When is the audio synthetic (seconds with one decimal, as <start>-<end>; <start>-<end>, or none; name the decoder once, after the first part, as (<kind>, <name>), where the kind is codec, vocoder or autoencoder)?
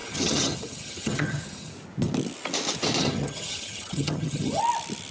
0.0-1.7 (vocoder, HiFi-GAN); 3.0-4.6